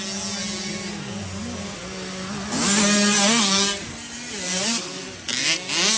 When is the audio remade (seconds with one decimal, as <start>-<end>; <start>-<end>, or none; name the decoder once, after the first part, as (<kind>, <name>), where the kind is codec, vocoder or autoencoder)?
none